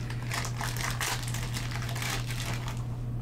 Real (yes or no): yes